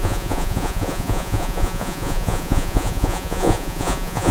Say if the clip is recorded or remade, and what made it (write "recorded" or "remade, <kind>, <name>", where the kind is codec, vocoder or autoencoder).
remade, vocoder, Vocos